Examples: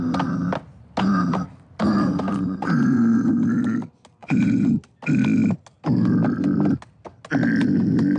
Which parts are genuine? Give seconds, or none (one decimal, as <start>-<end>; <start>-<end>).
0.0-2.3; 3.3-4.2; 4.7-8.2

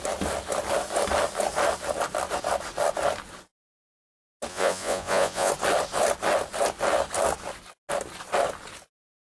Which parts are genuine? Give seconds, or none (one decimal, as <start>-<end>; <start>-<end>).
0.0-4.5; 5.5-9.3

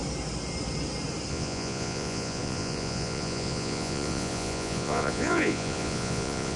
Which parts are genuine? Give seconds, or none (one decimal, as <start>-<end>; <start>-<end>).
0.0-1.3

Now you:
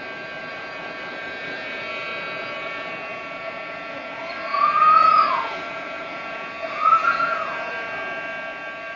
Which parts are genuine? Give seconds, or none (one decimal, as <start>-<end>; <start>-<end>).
0.0-0.5; 4.0-4.5; 6.5-7.0; 7.7-9.0